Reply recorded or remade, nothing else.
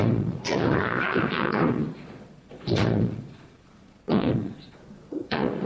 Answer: remade